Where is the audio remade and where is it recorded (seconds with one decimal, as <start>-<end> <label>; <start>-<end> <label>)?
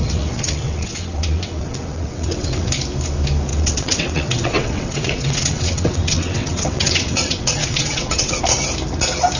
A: 0.0-2.7 remade; 2.7-3.5 recorded; 3.5-8.4 remade; 8.4-9.4 recorded